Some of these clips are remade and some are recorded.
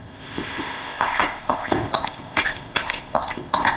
remade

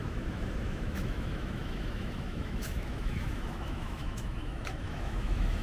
remade